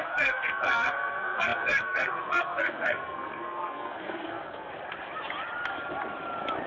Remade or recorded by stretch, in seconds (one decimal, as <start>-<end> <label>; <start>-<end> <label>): 0.0-4.7 remade; 4.7-6.7 recorded